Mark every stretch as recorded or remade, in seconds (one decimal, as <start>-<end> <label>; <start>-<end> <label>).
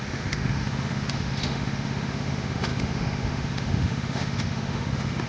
0.0-5.3 remade